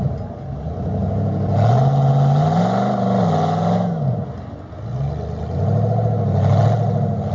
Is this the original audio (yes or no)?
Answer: yes